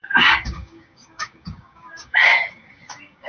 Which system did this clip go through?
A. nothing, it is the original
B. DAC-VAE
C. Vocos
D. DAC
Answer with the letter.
D